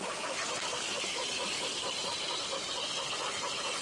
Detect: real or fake real